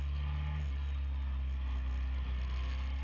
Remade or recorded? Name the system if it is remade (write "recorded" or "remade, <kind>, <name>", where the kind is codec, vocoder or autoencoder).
recorded